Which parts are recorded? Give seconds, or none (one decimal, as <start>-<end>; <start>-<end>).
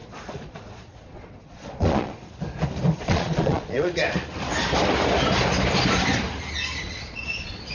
2.2-2.9; 4.0-6.8